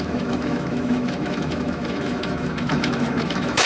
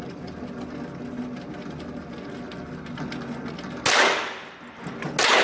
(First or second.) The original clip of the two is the second